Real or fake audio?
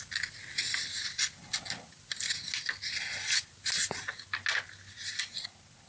real